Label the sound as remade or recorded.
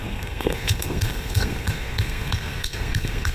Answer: remade